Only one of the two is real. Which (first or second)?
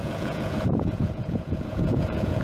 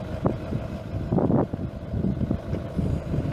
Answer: second